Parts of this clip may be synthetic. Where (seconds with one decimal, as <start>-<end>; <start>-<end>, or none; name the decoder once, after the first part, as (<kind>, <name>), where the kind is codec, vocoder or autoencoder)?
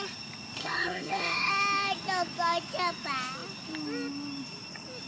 0.6-1.5 (codec, SNAC)